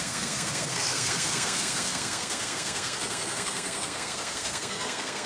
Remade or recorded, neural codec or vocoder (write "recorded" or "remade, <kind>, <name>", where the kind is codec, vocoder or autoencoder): remade, codec, SNAC